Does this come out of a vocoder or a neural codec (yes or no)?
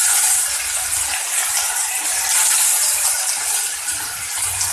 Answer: no